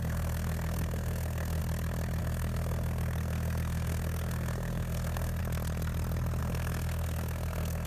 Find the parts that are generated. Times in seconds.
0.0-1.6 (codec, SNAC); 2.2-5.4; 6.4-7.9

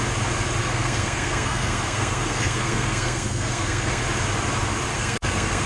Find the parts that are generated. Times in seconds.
0.6-4.0 (codec, SNAC); 4.9-5.7

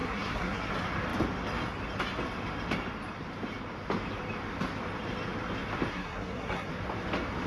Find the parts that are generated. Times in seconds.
0.0-0.7 (codec, SNAC); 5.9-6.7

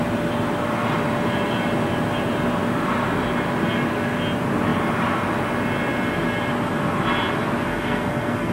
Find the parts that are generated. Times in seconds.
7.7-8.5 (codec, SNAC)